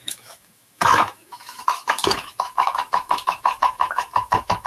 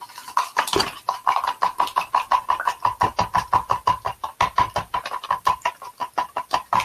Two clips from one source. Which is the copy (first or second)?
first